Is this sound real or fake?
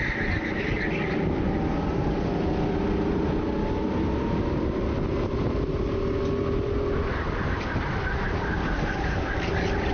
real